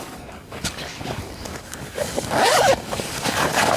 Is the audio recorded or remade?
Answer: remade